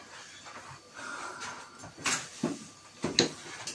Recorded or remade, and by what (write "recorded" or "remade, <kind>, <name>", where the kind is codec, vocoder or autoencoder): recorded